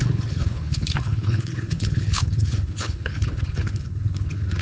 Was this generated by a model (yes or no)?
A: yes